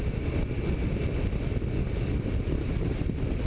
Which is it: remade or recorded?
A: recorded